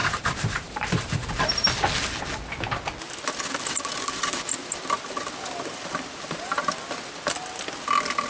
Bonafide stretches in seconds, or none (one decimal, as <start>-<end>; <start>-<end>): 1.3-8.3